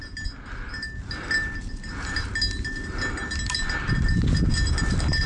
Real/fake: real